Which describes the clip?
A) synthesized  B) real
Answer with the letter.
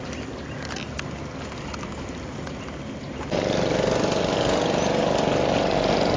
B